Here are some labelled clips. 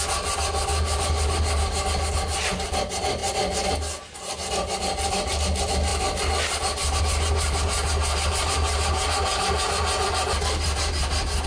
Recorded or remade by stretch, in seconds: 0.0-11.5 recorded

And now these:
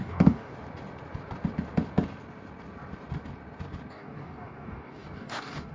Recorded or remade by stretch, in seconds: 0.0-0.5 remade; 0.5-3.9 recorded; 3.9-5.7 remade

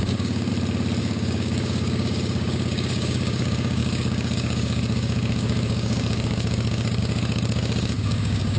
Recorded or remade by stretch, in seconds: 0.0-0.5 remade; 0.5-1.0 recorded; 1.0-8.6 remade

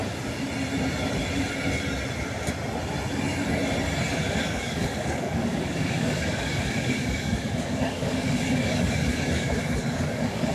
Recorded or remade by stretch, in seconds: 0.0-4.2 recorded; 4.2-10.5 remade

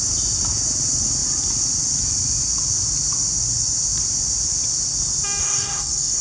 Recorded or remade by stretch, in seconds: 0.0-5.4 recorded; 5.4-6.2 remade

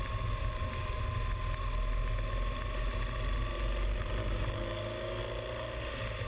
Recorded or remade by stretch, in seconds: 0.0-0.4 recorded; 0.4-1.0 remade; 1.0-4.2 recorded; 4.2-5.2 remade; 5.2-6.3 recorded

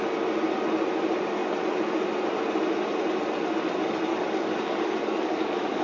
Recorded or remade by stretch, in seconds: 0.0-4.1 recorded; 4.1-5.8 remade